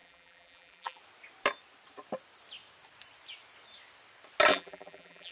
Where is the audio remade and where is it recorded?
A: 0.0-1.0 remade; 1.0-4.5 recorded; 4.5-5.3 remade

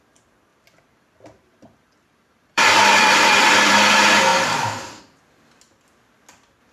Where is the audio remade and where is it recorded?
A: 0.0-0.5 recorded; 0.5-3.7 remade; 3.7-6.7 recorded

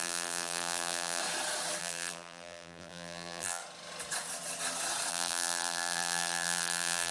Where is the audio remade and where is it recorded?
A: 0.0-1.2 remade; 1.2-1.8 recorded; 1.8-3.6 remade; 3.6-5.1 recorded; 5.1-7.1 remade